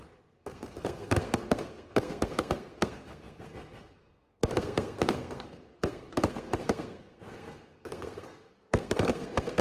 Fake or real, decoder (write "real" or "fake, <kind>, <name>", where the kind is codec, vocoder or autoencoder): fake, codec, SNAC